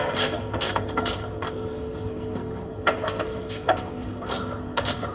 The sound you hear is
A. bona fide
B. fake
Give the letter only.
B